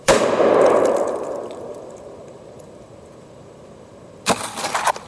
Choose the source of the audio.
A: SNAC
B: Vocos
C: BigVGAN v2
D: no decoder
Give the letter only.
C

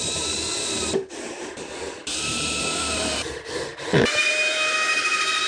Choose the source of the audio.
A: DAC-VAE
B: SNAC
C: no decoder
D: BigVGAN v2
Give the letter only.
D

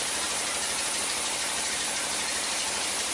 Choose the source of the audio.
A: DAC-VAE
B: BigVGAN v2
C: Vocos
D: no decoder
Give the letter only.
B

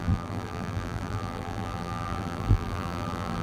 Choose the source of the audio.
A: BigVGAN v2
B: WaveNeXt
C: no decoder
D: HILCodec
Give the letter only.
A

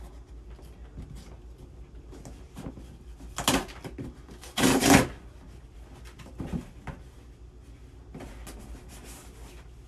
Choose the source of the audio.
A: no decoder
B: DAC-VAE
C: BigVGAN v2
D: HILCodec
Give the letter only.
A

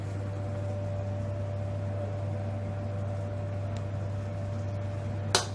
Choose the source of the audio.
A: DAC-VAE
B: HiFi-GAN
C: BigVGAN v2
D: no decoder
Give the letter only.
D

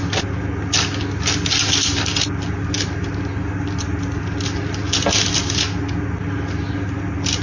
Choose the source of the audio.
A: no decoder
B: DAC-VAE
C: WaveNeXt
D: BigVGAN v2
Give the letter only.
A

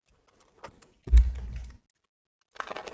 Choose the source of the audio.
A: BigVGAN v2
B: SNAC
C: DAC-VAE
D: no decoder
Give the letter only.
D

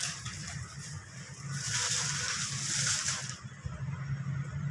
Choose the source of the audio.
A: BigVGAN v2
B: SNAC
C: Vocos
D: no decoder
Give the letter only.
D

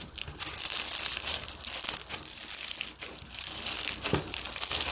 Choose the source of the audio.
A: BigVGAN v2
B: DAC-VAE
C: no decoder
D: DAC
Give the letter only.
C